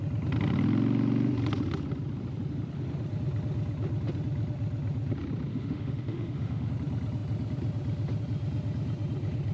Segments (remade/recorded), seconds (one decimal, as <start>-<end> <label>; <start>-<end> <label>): 0.0-5.5 recorded; 5.5-6.7 remade; 6.7-9.5 recorded